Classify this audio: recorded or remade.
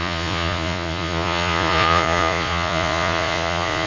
remade